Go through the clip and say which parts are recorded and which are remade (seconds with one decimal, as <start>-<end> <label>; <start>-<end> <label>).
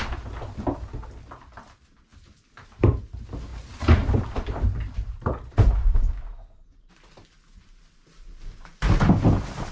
0.0-2.1 recorded; 2.1-2.9 remade; 2.9-3.5 recorded; 3.5-6.2 remade; 6.2-9.7 recorded